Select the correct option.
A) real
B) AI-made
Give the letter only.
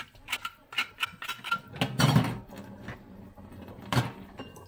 A